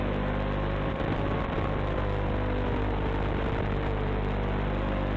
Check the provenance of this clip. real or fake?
real